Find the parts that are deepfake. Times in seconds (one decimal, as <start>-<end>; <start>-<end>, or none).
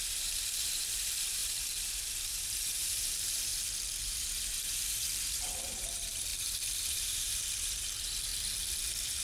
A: 0.0-3.5; 4.0-8.3